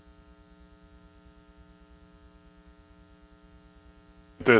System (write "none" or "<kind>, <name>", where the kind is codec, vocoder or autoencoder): none